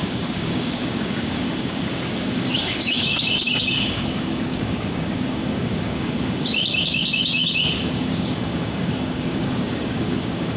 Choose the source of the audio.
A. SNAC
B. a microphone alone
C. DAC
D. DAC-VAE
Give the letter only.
C